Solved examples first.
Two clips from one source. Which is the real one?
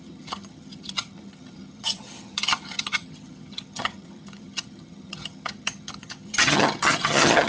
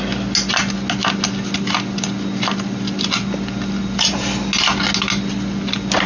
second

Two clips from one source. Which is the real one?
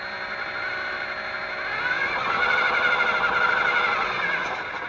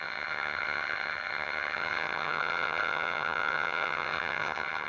first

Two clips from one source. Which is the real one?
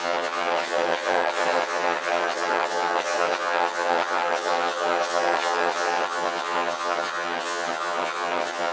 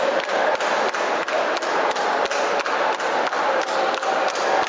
second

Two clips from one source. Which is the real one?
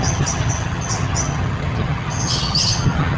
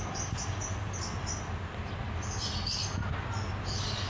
second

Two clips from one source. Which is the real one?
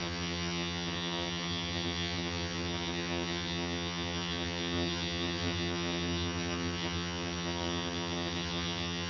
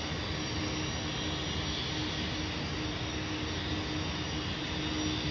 second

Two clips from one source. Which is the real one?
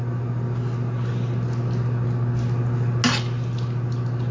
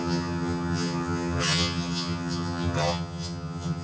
first